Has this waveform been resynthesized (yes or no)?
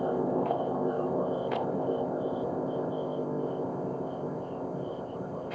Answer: yes